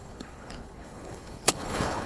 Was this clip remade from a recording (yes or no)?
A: yes